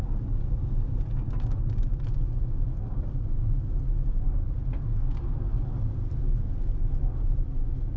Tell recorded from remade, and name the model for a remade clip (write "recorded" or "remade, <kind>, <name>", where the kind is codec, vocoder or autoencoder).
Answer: recorded